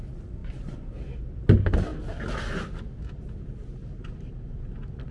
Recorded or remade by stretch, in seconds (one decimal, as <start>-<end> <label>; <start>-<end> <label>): 0.0-5.1 recorded